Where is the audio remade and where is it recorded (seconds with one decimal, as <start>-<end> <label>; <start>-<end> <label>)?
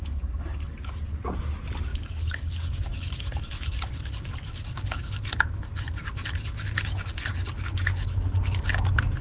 0.0-0.9 remade; 0.9-1.9 recorded; 1.9-2.5 remade; 2.5-2.9 recorded; 2.9-5.0 remade; 5.0-9.2 recorded